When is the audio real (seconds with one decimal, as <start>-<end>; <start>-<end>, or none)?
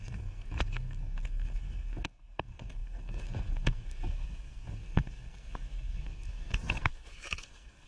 none